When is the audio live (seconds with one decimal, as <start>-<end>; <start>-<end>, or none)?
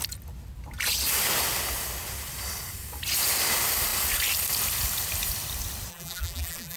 0.0-5.9